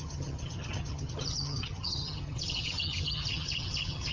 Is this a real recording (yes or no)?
no